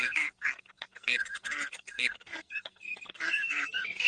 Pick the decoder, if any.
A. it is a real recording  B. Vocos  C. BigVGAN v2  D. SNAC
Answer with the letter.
D